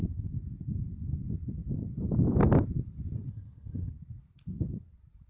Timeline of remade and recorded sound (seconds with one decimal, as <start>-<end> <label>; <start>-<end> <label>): 0.0-3.3 recorded; 3.3-3.9 remade; 3.9-5.3 recorded